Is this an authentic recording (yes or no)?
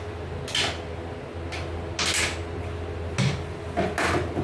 yes